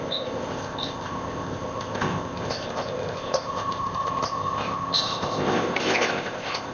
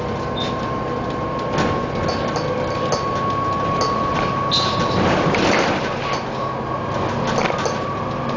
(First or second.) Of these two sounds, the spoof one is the first